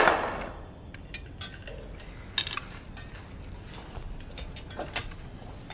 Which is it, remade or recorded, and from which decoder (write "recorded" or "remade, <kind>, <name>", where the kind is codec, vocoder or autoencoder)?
recorded